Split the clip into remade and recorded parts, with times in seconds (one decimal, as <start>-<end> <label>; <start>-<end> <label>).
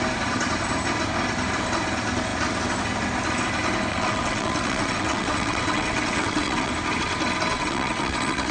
0.0-3.9 recorded; 3.9-6.7 remade; 6.7-7.5 recorded; 7.5-8.5 remade